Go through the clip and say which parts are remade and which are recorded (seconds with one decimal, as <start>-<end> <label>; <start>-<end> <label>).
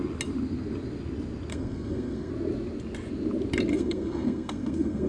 0.0-1.5 recorded; 1.5-2.3 remade; 2.3-3.7 recorded; 3.7-5.1 remade